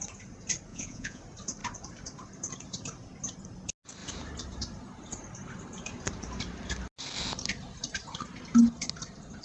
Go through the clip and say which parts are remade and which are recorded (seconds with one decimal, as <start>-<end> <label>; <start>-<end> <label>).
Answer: 0.0-0.7 recorded; 0.7-1.2 remade; 1.2-9.4 recorded